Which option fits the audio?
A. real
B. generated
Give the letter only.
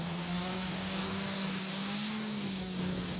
B